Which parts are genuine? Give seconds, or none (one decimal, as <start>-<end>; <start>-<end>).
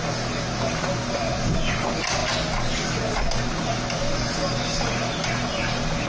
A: 0.0-6.1